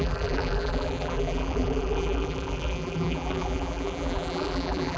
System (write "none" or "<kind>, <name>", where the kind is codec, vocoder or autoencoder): vocoder, BigVGAN v2